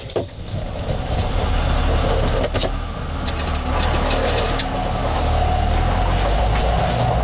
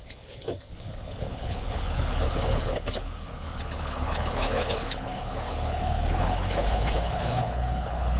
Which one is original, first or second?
first